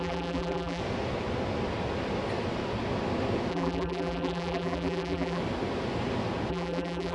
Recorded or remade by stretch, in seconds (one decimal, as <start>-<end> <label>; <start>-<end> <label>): 0.0-0.8 remade; 0.8-3.5 recorded; 3.5-5.4 remade; 5.4-6.5 recorded; 6.5-7.1 remade